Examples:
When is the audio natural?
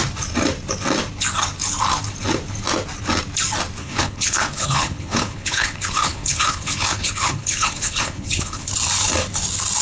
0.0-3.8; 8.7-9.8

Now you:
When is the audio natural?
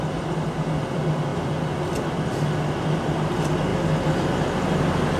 0.0-5.2